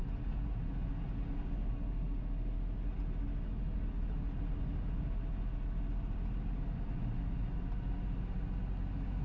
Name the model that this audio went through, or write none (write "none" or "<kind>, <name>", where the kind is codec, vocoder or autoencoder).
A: none